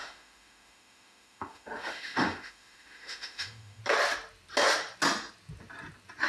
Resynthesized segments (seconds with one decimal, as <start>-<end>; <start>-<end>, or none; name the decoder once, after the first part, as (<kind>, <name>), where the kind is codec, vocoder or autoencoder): 0.0-3.8 (autoencoder, DAC-VAE)